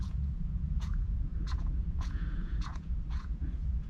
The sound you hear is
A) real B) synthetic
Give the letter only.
B